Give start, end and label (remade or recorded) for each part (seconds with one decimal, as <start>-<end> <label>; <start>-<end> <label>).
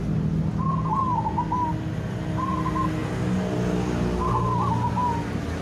0.0-5.6 recorded